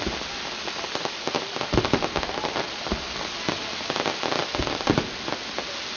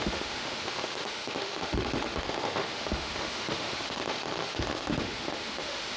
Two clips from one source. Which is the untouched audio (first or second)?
first